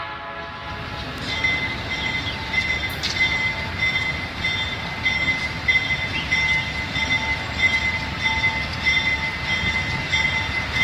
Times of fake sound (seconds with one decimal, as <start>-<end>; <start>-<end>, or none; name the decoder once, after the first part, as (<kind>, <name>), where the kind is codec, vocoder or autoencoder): none